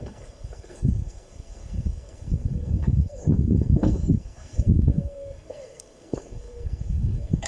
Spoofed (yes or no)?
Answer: yes